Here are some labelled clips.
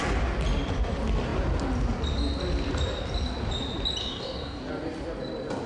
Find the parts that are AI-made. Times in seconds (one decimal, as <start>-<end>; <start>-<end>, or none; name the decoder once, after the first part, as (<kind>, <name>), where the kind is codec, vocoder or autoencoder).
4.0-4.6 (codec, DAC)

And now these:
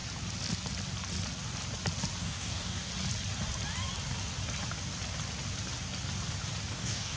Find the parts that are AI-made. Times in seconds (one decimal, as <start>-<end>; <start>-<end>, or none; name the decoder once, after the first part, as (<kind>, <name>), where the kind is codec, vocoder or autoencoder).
2.2-2.9 (codec, DAC); 6.7-7.2

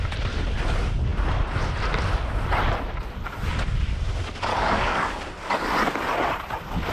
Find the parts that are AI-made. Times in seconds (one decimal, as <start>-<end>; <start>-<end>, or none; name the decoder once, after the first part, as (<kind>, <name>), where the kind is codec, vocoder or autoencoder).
4.5-5.2 (codec, DAC)

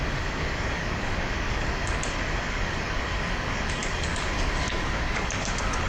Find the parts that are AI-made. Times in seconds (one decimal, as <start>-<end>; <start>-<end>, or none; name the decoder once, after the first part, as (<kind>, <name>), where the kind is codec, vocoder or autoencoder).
0.0-5.9 (codec, DAC)

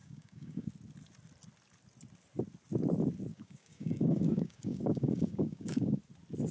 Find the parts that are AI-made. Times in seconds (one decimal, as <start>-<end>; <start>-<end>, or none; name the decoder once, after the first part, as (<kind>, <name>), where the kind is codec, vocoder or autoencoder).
0.0-0.7 (codec, DAC); 3.3-6.0

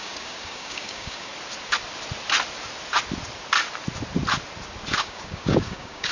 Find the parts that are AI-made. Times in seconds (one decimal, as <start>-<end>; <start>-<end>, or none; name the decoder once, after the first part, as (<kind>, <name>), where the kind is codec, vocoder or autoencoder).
0.0-1.3 (codec, DAC); 5.0-6.1